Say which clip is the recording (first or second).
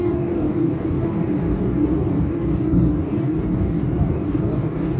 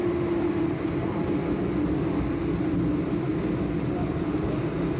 second